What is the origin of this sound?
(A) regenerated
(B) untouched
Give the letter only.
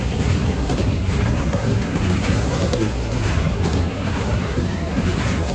A